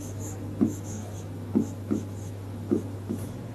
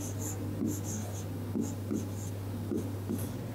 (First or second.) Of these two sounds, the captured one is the second